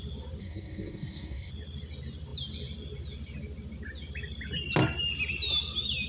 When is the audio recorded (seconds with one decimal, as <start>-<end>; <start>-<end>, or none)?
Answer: 0.0-0.4; 1.5-6.1

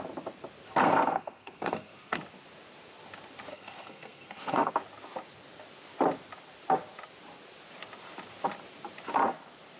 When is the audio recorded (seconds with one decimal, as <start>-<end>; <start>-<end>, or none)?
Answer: 0.0-0.8; 2.2-3.5; 4.7-9.8

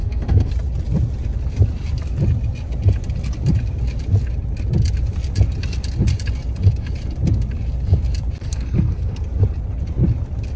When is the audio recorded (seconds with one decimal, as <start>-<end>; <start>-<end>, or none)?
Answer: 0.5-8.4; 9.2-10.6

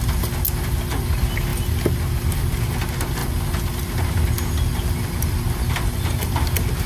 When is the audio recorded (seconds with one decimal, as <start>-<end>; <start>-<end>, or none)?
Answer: 0.0-6.9

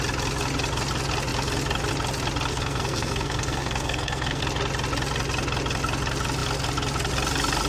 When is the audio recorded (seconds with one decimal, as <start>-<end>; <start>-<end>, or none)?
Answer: 0.0-2.5; 4.4-7.7

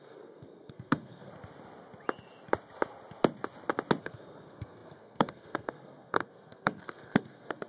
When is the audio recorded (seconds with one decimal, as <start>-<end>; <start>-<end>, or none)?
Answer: 1.3-4.0

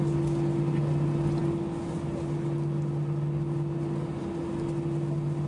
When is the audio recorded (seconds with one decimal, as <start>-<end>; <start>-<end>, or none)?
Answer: 0.0-5.5

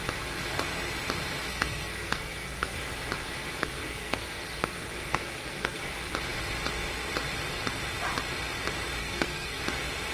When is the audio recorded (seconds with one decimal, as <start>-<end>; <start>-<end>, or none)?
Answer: 0.0-1.5; 2.8-3.6; 5.8-9.0; 9.6-10.1